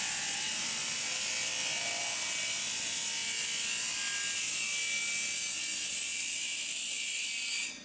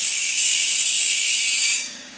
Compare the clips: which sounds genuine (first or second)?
first